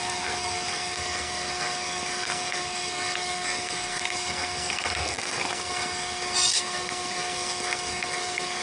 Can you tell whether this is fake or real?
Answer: fake